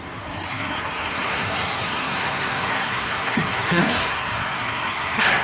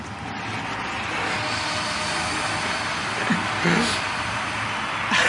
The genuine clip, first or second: second